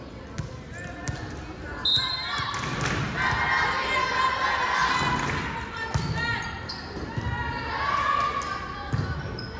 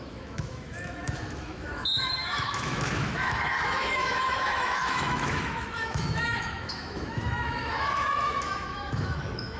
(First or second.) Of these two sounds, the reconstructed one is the second